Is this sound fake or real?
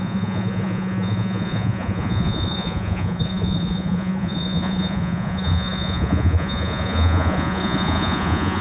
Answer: fake